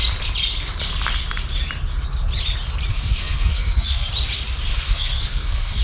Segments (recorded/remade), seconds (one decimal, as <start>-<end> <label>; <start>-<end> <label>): 0.0-2.9 recorded; 2.9-4.1 remade; 4.1-4.7 recorded; 4.7-5.8 remade